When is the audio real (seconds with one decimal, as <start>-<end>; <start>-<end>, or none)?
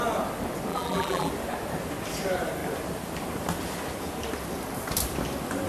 0.0-0.7; 1.3-5.7